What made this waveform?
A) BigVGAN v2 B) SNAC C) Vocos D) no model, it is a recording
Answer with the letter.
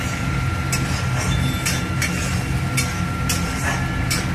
D